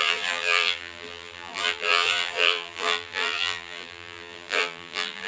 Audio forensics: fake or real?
fake